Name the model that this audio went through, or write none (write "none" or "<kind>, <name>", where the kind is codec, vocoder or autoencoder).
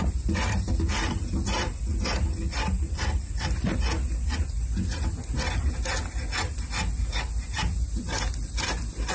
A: none